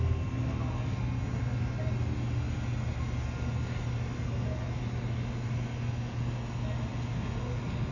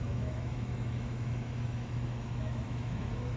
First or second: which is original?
first